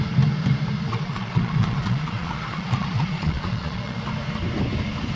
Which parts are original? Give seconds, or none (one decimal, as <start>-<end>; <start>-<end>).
0.0-0.9; 4.0-5.2

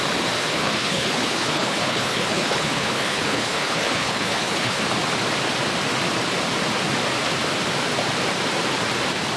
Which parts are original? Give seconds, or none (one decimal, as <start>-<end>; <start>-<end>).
0.0-0.4; 4.8-9.4

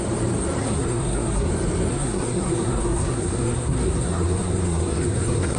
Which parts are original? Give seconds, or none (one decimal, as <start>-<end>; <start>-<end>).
0.0-0.6; 1.5-1.9

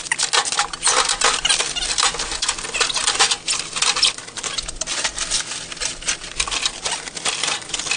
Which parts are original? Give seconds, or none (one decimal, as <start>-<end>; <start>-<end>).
0.0-8.0

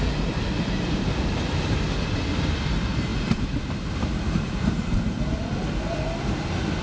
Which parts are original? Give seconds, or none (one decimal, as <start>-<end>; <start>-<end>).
0.0-6.8

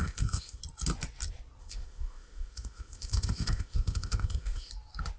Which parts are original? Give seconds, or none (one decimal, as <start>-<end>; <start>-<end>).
0.6-1.6; 4.7-5.2

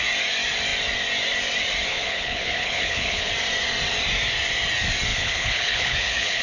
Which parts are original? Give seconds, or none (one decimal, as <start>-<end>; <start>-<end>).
0.0-1.9; 3.3-5.1

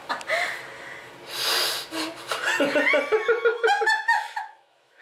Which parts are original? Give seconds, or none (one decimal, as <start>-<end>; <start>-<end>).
0.0-3.5